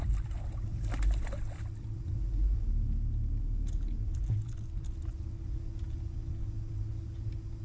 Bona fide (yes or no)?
yes